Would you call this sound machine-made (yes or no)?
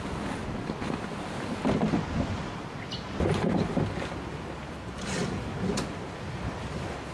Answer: no